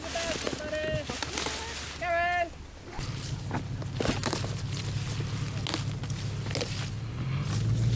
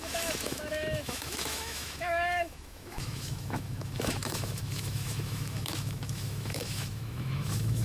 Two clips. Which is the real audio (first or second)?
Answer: first